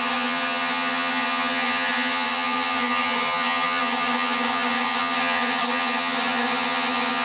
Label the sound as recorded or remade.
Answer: remade